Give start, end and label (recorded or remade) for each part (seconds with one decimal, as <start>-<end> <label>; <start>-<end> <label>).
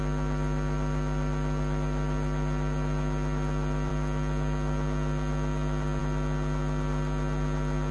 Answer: 0.0-7.9 recorded